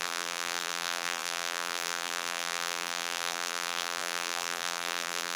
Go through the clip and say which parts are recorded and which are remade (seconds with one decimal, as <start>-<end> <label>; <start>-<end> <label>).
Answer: 0.0-5.4 remade